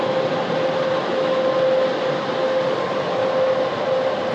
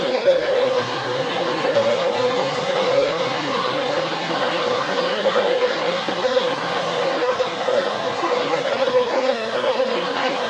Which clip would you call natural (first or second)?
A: first